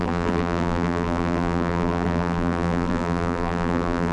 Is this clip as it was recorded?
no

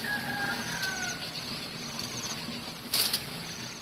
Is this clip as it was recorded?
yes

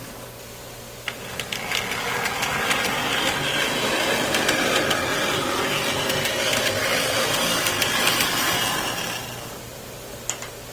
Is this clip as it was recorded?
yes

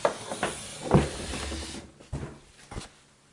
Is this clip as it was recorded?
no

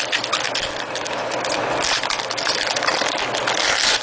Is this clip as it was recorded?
yes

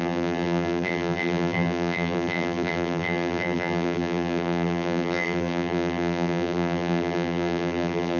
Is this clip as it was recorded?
no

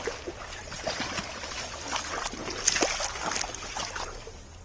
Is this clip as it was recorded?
yes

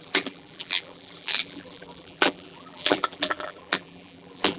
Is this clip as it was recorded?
no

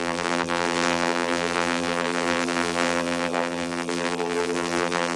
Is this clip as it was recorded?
no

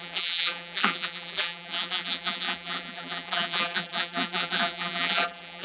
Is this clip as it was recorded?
no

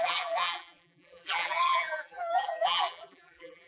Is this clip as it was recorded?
no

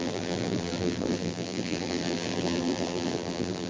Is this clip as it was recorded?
no